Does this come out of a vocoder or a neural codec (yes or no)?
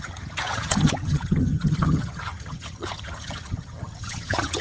yes